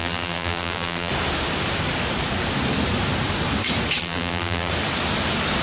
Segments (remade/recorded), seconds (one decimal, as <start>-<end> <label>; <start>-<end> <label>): 0.0-1.1 remade; 1.1-4.0 recorded; 4.0-4.7 remade; 4.7-5.6 recorded